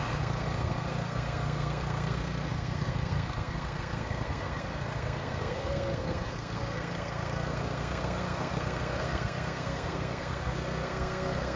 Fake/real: fake